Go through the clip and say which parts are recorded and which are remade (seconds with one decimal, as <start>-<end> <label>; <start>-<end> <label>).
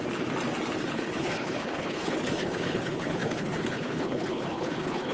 0.0-0.9 recorded; 0.9-5.1 remade